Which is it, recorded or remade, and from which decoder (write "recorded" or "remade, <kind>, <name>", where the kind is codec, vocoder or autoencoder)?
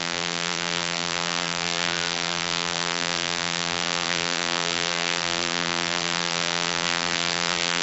remade, vocoder, BigVGAN v2